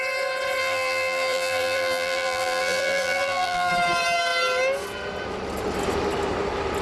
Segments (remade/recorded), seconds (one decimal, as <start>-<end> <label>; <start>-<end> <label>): 0.0-0.6 recorded; 0.6-3.7 remade; 3.7-6.8 recorded

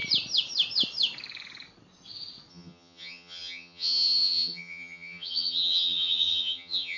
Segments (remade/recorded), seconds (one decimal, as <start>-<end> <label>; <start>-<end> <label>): 0.0-2.5 recorded; 2.5-7.0 remade